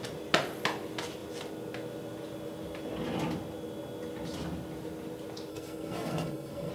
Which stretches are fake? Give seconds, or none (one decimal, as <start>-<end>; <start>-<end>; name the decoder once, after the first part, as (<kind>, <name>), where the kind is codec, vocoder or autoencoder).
5.5-6.7 (codec, SNAC)